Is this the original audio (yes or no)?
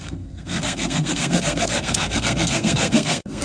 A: no